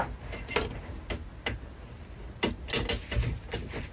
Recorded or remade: recorded